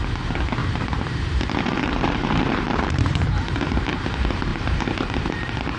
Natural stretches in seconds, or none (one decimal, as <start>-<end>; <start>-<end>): 0.0-0.6; 4.1-4.5; 5.3-5.8